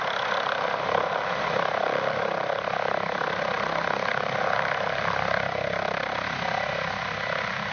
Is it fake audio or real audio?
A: real